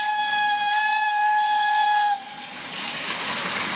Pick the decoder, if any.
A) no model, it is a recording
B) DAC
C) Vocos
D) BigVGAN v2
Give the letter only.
B